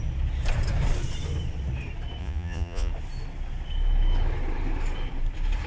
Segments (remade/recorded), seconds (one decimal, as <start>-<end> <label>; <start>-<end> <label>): 0.0-2.2 recorded; 2.2-2.9 remade; 2.9-5.7 recorded